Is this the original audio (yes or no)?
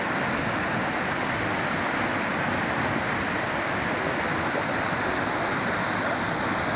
yes